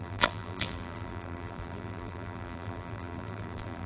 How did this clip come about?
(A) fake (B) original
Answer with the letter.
A